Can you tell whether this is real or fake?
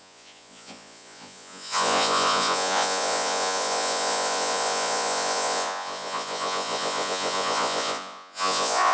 fake